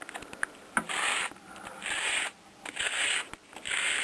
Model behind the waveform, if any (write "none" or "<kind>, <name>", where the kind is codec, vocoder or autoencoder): none